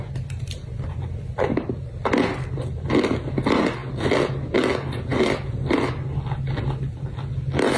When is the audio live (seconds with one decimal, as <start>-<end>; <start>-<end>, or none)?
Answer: 0.0-7.8